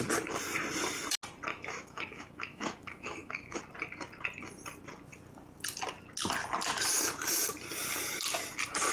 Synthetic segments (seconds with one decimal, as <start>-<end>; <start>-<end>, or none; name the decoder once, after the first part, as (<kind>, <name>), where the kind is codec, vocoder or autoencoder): 1.5-3.6 (autoencoder, DAC-VAE)